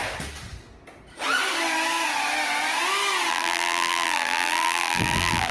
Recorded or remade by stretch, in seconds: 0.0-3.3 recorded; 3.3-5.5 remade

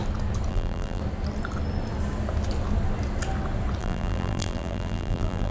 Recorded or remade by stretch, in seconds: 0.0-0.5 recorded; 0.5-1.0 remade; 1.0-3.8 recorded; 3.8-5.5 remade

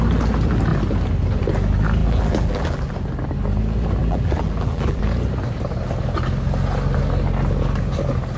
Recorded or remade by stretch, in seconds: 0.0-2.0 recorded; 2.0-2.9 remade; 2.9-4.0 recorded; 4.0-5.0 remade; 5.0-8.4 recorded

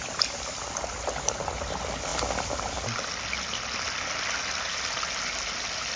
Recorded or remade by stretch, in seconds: 0.0-6.0 recorded

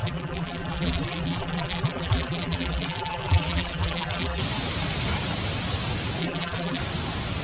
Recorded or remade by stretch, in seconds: 0.0-4.4 remade; 4.4-6.2 recorded; 6.2-6.8 remade; 6.8-7.4 recorded

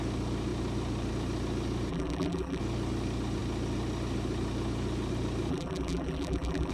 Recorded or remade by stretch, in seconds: 0.0-1.9 recorded; 1.9-2.6 remade; 2.6-5.5 recorded; 5.5-6.7 remade

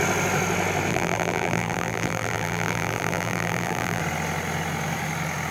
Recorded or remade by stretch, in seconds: 0.0-0.9 recorded; 0.9-4.0 remade; 4.0-5.5 recorded